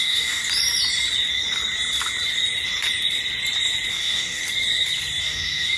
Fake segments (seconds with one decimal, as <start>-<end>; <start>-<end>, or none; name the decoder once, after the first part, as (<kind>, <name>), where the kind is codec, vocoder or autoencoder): 0.0-0.4 (codec, DAC); 3.9-4.4; 5.2-5.8